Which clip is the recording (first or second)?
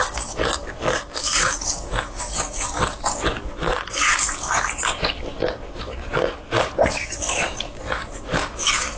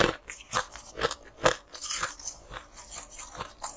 second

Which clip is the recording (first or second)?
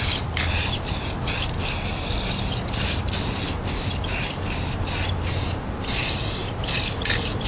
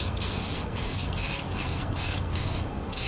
first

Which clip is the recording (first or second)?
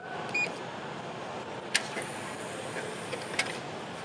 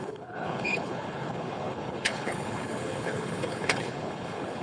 first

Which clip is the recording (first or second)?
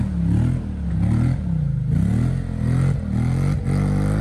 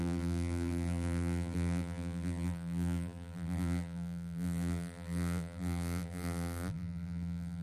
first